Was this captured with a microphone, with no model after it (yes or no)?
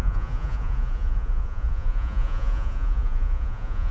no